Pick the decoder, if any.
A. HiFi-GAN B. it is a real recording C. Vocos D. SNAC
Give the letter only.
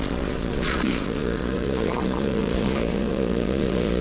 C